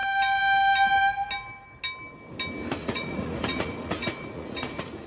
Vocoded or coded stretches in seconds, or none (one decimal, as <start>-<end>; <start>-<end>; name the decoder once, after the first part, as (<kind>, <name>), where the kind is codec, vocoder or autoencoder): 2.8-5.1 (vocoder, Vocos)